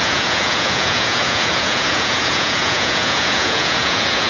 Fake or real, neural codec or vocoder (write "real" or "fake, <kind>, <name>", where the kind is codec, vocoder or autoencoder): fake, vocoder, Vocos